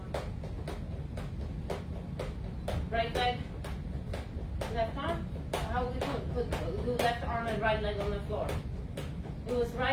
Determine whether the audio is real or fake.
real